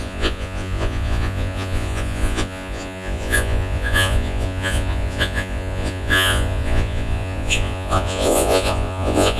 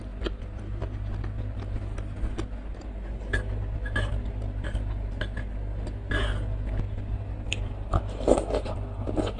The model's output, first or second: first